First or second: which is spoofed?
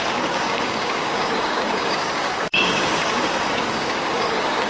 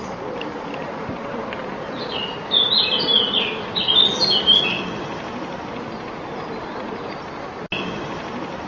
first